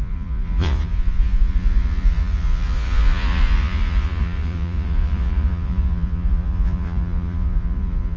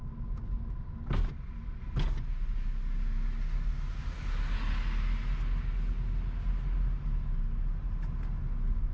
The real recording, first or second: second